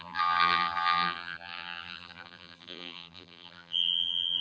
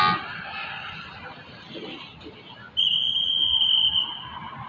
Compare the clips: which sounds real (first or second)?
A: second